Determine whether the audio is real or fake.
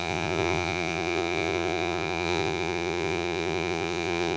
fake